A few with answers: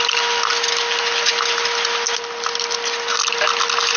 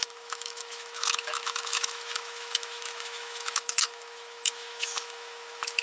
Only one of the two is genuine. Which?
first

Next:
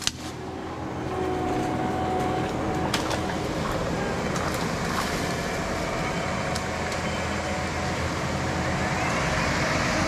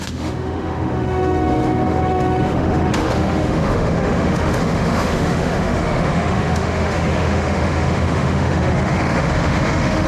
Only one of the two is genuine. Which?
first